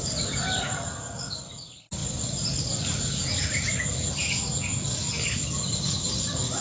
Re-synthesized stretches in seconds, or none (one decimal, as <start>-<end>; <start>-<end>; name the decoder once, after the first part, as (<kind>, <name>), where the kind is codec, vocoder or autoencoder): none